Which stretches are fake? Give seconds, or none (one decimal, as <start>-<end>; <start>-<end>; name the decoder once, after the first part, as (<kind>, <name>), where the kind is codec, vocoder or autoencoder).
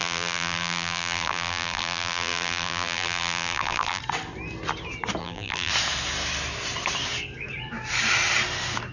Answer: 0.0-4.0 (vocoder, BigVGAN v2); 5.2-5.7